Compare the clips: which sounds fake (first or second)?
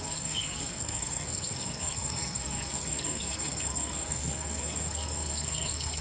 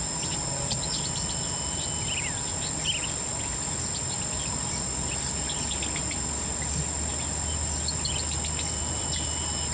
first